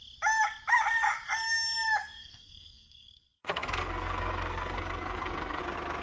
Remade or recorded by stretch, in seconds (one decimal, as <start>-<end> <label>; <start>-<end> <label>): 0.0-2.0 recorded; 2.0-5.6 remade; 5.6-6.0 recorded